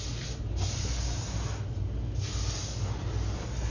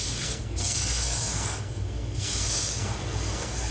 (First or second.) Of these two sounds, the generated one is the second